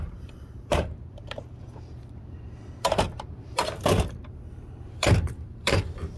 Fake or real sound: fake